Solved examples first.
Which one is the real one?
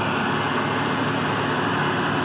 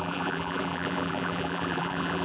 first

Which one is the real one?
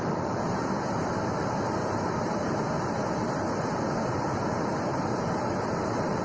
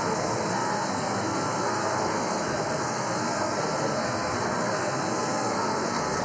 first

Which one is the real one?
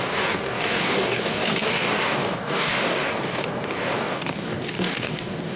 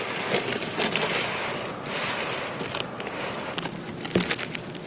second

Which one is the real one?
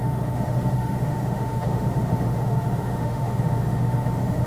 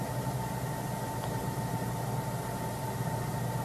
second